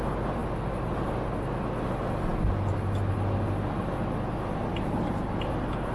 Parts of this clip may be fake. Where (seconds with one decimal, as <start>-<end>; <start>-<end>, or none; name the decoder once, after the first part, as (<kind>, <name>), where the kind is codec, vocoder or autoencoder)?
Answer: none